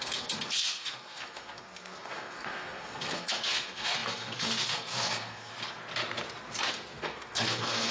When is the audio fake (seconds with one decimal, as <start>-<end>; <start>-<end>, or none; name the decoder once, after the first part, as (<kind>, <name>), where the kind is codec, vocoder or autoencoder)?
0.0-5.5 (codec, SNAC); 6.7-7.9